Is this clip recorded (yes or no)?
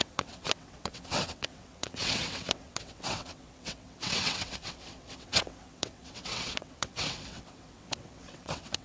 no